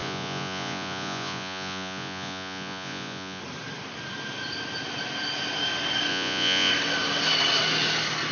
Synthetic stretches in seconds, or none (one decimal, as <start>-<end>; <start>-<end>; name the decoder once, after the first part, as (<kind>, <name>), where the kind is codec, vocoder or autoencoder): 0.0-3.4 (vocoder, Vocos); 6.1-6.7